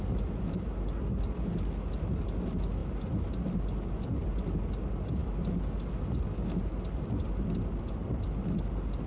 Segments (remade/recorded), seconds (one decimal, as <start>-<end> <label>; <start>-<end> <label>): 0.0-9.1 recorded